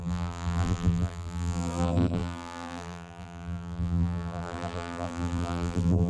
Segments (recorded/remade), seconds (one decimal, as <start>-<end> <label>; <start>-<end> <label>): 0.0-6.1 remade